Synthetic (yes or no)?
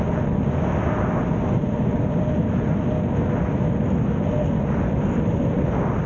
no